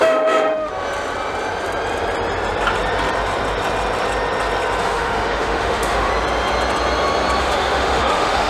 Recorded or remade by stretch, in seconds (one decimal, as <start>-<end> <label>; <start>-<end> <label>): 0.0-0.7 remade; 0.7-4.8 recorded; 4.8-6.1 remade; 6.1-7.4 recorded; 7.4-8.5 remade